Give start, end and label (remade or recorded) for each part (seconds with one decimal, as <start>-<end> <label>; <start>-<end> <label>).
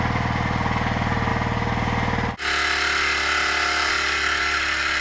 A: 0.0-5.0 recorded